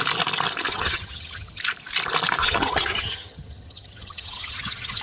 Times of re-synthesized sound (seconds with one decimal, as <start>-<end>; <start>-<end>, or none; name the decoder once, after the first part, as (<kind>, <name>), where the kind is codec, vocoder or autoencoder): 0.7-1.6 (vocoder, HiFi-GAN); 2.4-5.0